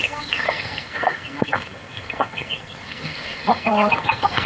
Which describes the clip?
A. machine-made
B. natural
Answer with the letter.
A